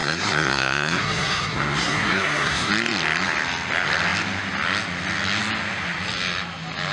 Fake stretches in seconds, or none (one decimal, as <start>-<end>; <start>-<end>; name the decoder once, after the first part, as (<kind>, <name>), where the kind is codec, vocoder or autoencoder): 0.0-2.7 (codec, SNAC)